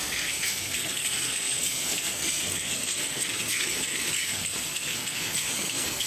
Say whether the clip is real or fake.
fake